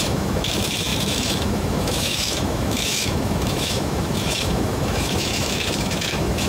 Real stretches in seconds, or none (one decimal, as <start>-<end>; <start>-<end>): none